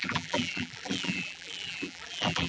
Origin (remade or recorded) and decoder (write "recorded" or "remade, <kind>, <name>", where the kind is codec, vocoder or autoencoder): remade, vocoder, BigVGAN v2